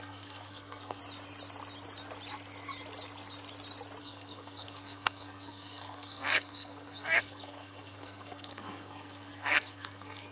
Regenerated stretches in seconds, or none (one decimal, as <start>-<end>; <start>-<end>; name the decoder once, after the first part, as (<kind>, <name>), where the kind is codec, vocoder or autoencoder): 0.0-1.0 (codec, SNAC); 4.0-10.3